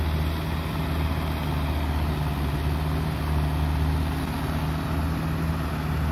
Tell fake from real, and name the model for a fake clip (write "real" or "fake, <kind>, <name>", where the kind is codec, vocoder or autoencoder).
real